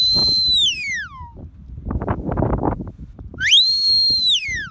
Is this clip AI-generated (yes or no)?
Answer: no